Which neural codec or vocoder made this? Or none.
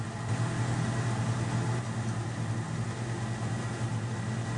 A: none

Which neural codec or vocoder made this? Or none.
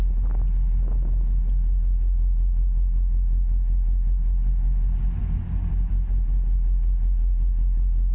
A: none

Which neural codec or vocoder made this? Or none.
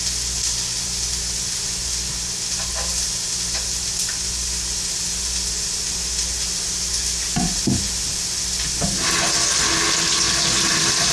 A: none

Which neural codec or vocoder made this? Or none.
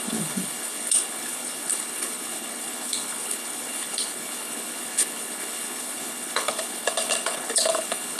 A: codec, HILCodec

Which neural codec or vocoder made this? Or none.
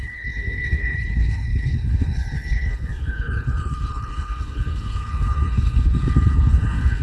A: codec, HILCodec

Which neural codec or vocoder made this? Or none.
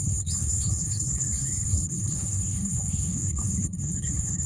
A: codec, HILCodec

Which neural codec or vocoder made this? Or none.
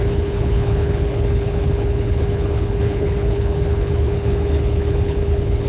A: codec, HILCodec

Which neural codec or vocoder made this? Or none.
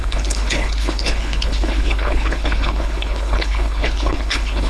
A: codec, HILCodec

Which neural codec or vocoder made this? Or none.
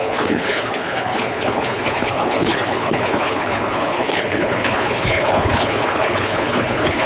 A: codec, HILCodec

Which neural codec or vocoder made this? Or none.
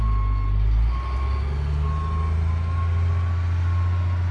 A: none